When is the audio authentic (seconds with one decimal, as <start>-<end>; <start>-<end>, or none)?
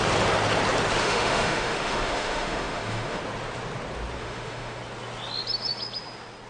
0.0-1.0; 3.2-4.2; 4.8-6.5